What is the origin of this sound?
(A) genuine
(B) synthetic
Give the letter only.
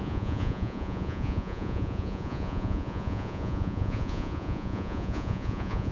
B